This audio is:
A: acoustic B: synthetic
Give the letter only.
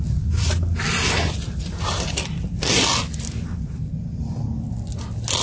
A